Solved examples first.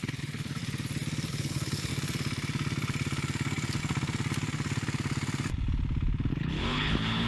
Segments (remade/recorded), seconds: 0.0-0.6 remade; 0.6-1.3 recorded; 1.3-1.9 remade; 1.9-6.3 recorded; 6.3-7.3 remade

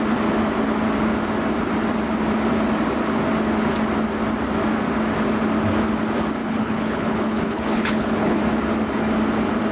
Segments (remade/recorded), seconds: 0.0-6.4 recorded; 6.4-8.4 remade; 8.4-9.7 recorded

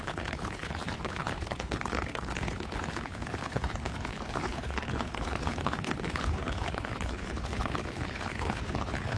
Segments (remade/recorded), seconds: 0.0-9.2 remade

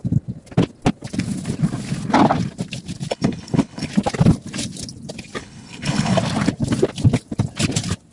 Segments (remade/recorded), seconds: 0.0-3.1 recorded; 3.1-3.9 remade; 3.9-5.4 recorded; 5.4-6.2 remade; 6.2-8.1 recorded

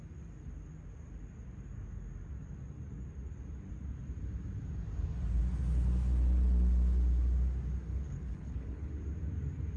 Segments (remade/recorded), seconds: 0.0-7.9 recorded; 7.9-8.9 remade; 8.9-9.8 recorded

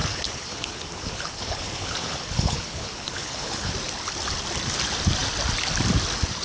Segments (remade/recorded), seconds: 0.0-3.7 remade; 3.7-6.4 recorded

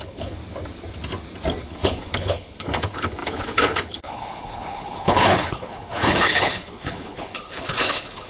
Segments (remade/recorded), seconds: 0.0-0.4 remade; 0.4-1.6 recorded; 1.6-8.3 remade